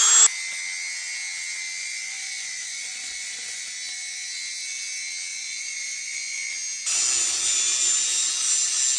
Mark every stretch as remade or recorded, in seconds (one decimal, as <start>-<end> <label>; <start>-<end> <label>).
0.0-1.8 recorded; 1.8-3.6 remade; 3.6-5.3 recorded; 5.3-6.5 remade; 6.5-9.0 recorded